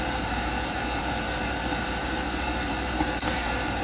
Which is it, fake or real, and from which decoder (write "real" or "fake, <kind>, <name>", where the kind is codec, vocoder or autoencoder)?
fake, vocoder, BigVGAN v2